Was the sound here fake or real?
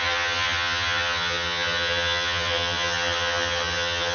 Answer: fake